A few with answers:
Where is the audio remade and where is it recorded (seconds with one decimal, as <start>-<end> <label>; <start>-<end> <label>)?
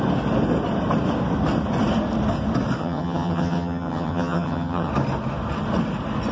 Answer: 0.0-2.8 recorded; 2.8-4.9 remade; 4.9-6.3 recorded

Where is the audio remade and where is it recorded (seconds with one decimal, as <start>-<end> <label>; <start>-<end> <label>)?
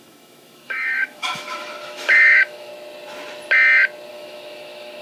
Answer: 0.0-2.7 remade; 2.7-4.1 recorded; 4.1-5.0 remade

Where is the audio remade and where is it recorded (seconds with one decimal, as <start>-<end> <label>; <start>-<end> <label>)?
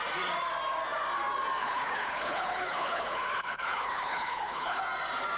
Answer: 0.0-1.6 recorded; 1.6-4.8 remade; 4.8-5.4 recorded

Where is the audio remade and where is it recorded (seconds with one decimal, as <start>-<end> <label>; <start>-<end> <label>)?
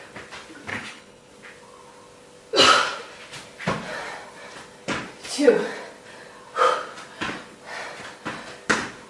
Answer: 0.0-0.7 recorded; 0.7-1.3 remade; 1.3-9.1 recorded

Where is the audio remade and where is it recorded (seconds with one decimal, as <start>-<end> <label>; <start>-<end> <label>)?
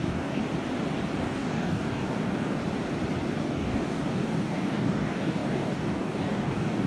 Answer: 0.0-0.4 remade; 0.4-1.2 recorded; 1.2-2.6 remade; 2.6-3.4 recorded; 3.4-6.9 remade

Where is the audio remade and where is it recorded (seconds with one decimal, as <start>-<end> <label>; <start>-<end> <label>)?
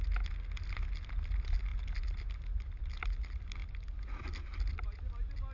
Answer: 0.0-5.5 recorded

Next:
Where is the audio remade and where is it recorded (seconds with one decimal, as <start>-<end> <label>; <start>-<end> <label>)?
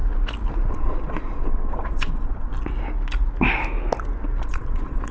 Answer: 0.0-0.7 recorded; 0.7-2.5 remade; 2.5-4.4 recorded; 4.4-5.1 remade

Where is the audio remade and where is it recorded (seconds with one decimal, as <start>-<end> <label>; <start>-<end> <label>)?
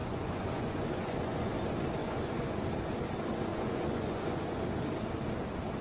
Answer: 0.0-1.5 remade; 1.5-2.0 recorded; 2.0-2.6 remade; 2.6-3.5 recorded; 3.5-4.6 remade; 4.6-5.8 recorded